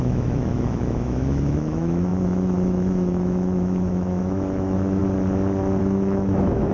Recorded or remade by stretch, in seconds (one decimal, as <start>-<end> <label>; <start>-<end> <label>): 0.0-5.0 remade; 5.0-5.8 recorded; 5.8-6.7 remade